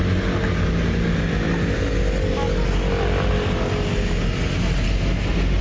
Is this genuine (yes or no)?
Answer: yes